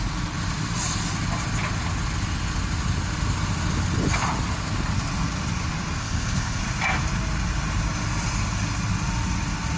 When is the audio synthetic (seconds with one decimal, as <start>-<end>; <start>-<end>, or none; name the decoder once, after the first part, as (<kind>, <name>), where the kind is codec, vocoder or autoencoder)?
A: 6.0-6.6 (codec, ZipCodec)